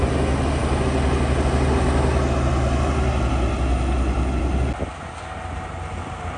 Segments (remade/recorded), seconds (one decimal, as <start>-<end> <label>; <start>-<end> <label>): 0.0-6.4 recorded